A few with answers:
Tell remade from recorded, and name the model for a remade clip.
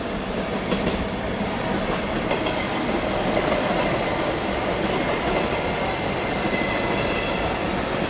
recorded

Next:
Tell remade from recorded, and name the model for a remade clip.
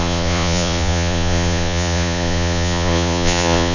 remade, vocoder, Vocos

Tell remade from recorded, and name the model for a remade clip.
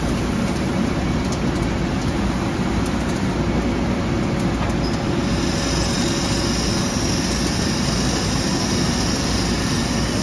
recorded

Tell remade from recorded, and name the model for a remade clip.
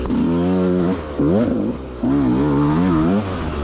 recorded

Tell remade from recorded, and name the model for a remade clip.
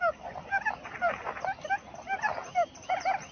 recorded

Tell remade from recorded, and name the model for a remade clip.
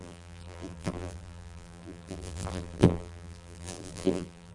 remade, vocoder, BigVGAN v2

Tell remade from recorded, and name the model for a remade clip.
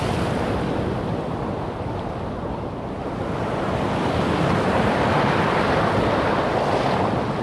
recorded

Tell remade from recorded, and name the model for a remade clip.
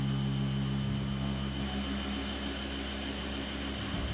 recorded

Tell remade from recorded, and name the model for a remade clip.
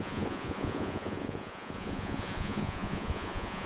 remade, vocoder, Vocos